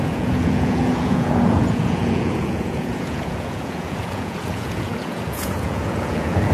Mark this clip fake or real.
fake